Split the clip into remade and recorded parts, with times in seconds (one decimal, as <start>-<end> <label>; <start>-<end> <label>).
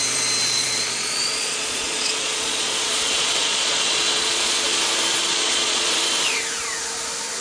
0.0-0.4 recorded; 0.4-4.8 remade; 4.8-5.3 recorded; 5.3-5.9 remade; 5.9-7.4 recorded